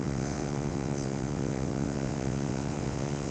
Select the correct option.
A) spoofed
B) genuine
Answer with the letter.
A